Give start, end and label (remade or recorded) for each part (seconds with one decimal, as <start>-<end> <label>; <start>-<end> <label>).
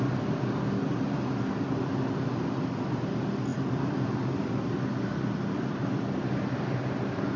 0.0-7.4 recorded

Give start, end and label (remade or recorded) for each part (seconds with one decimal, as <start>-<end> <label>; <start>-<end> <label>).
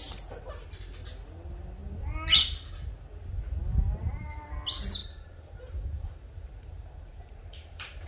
0.0-5.0 recorded; 5.0-8.1 remade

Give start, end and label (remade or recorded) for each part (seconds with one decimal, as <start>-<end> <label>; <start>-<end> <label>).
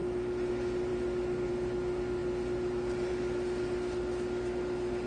0.0-0.9 recorded; 0.9-1.5 remade; 1.5-2.2 recorded; 2.2-3.1 remade; 3.1-5.1 recorded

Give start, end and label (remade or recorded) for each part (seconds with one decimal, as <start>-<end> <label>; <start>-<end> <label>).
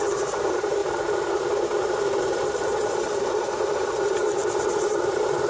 0.0-0.8 remade; 0.8-2.2 recorded; 2.2-5.5 remade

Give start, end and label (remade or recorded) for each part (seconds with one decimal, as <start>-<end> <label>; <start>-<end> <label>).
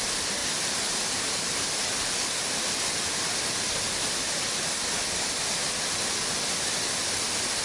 0.0-0.4 recorded; 0.4-1.9 remade; 1.9-7.6 recorded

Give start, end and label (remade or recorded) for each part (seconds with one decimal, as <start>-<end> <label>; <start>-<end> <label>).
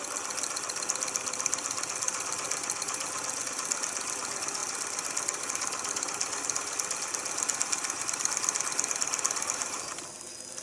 0.0-10.6 recorded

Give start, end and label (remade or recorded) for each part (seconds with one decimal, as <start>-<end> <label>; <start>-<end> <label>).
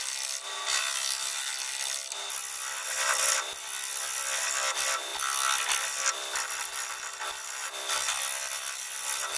0.0-5.1 recorded; 5.1-9.4 remade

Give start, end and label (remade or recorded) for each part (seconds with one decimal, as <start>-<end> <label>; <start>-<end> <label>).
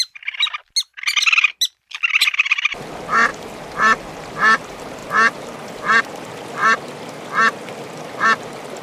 0.0-8.8 recorded